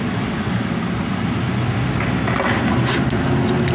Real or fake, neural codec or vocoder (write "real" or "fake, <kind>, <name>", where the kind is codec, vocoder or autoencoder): real